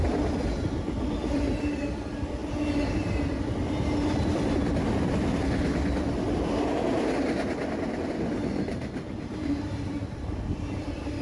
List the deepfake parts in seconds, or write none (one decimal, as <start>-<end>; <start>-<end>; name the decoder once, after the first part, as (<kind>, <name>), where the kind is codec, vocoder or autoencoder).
2.4-2.9 (vocoder, BigVGAN v2); 8.7-10.5